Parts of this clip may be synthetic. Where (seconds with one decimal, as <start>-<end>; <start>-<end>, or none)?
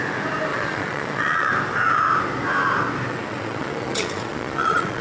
0.5-1.5; 3.1-5.0